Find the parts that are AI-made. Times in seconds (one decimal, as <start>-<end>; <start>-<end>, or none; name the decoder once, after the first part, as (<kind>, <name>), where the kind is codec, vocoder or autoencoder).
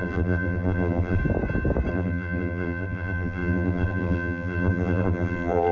0.0-1.2 (vocoder, BigVGAN v2); 1.9-5.7